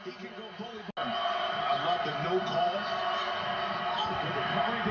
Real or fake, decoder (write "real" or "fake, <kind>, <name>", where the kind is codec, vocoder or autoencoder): real